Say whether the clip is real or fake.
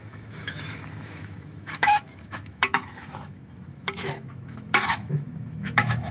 fake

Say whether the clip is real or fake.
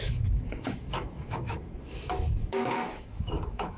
fake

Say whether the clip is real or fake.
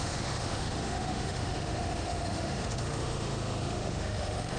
fake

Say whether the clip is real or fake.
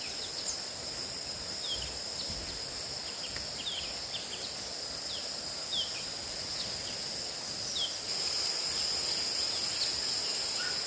real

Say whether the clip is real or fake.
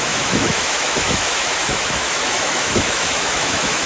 fake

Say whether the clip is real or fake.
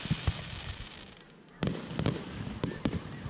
real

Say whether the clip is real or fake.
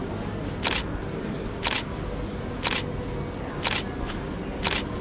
real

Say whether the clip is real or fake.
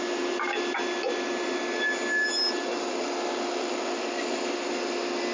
real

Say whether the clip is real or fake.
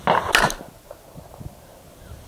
real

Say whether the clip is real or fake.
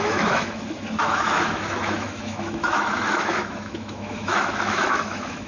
fake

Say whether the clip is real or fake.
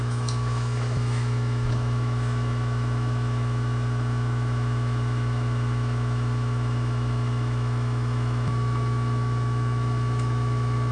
fake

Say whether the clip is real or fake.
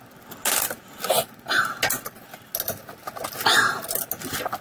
real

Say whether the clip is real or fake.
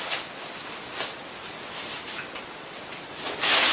real